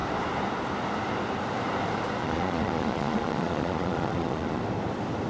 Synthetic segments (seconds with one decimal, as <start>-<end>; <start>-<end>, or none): 2.2-4.6